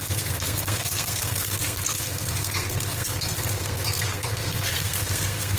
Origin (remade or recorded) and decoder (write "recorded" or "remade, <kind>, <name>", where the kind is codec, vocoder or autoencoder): remade, codec, SNAC